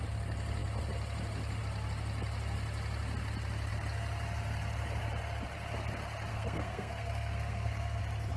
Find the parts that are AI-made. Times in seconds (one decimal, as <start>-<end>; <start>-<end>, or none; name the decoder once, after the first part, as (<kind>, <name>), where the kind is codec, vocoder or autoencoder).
6.3-8.0 (codec, SNAC)